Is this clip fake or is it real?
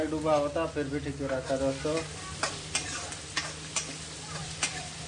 real